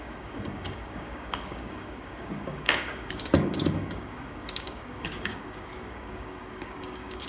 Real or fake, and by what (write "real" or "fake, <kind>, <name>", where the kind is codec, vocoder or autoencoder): fake, codec, DAC